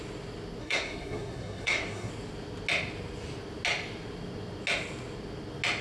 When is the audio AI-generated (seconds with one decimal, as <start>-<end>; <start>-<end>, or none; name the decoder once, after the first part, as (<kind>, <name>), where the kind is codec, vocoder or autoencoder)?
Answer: 0.6-2.1 (codec, SNAC)